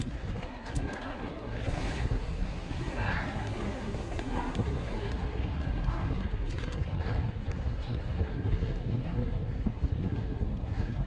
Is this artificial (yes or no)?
yes